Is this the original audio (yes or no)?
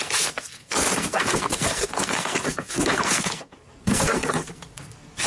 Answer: no